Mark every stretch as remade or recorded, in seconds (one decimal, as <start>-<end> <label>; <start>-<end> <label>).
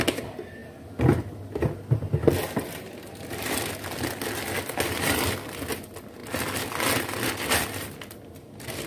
0.0-8.9 recorded